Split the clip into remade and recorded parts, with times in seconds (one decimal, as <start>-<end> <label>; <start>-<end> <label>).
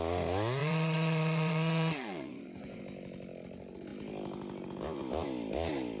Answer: 0.0-0.6 recorded; 0.6-2.8 remade; 2.8-6.0 recorded